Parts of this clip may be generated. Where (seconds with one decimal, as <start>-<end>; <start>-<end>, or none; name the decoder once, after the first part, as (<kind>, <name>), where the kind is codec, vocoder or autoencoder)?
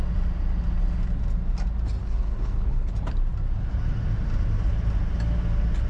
2.0-2.9 (codec, HILCodec)